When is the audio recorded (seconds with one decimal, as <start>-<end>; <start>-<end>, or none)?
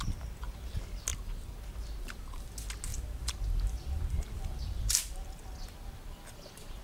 0.0-1.1; 2.5-2.9; 5.0-6.8